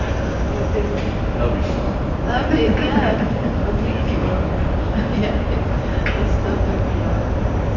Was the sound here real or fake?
real